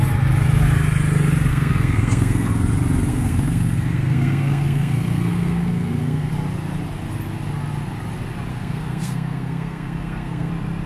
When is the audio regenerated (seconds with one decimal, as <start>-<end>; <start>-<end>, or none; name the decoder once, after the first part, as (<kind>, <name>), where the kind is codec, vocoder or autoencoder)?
1.5-2.5 (codec, SNAC); 3.1-6.3; 8.5-10.5